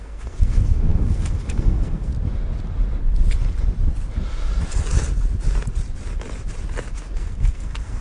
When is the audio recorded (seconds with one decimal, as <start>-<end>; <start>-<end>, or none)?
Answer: 2.1-6.9